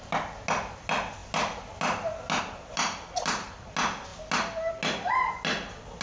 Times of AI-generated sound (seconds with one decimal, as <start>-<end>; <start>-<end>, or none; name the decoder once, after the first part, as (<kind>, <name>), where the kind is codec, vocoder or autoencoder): none